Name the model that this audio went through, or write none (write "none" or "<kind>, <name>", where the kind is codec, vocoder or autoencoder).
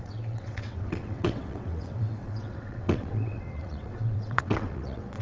vocoder, WaveNeXt